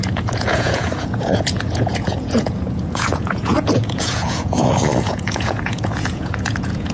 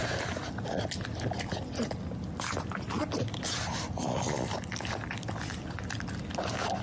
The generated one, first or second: first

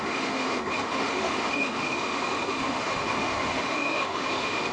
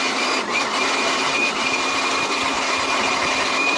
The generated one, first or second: first